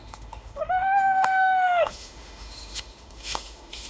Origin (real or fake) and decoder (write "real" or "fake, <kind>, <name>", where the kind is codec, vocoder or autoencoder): fake, autoencoder, DAC-VAE